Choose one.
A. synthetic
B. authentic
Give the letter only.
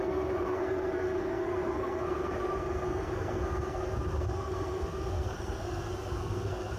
A